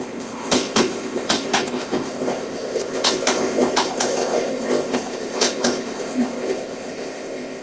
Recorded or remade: remade